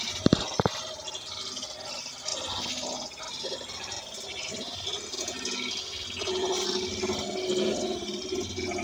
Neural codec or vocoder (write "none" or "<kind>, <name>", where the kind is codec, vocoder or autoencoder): none